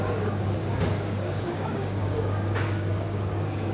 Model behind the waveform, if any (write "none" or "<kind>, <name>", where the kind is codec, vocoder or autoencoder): codec, DAC